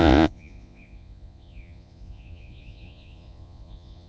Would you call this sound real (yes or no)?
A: no